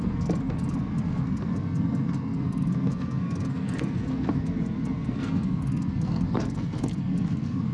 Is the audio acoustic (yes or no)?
no